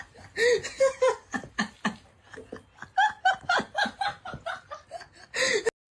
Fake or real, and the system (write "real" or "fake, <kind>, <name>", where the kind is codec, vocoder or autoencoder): real